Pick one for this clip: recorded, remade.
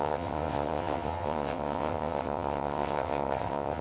remade